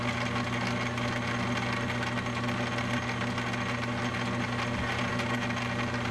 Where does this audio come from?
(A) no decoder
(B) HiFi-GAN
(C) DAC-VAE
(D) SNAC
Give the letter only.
A